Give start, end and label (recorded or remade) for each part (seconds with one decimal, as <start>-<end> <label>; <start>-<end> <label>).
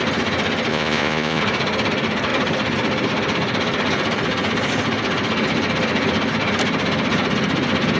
0.0-0.7 recorded; 0.7-1.4 remade; 1.4-8.0 recorded